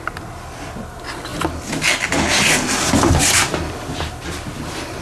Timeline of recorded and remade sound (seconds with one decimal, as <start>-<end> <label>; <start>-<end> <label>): 0.0-5.0 recorded